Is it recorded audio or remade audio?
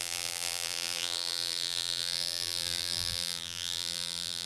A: remade